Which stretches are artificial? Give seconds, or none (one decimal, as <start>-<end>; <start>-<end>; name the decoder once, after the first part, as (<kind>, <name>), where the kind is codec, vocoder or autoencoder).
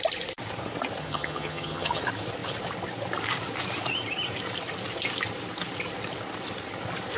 1.0-2.0 (vocoder, HiFi-GAN)